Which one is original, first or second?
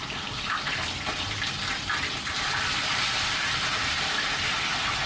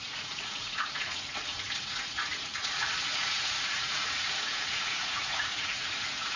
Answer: first